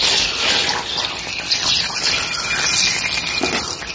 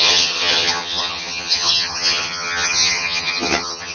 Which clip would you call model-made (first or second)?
second